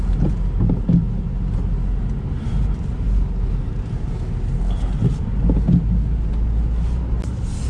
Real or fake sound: real